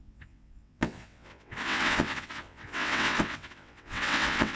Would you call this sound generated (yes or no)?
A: yes